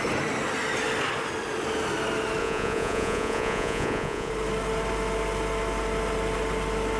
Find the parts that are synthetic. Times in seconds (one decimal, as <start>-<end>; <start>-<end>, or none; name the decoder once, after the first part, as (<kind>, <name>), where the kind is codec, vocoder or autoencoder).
2.4-4.3 (vocoder, Vocos)